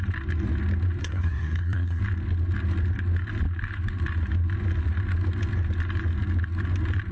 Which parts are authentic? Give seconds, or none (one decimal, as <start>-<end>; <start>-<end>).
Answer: 0.0-1.0; 2.0-7.1